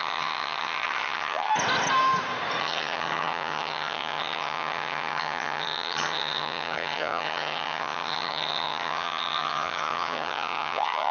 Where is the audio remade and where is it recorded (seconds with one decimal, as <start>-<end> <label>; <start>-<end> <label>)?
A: 0.0-1.5 remade; 1.5-2.6 recorded; 2.6-11.1 remade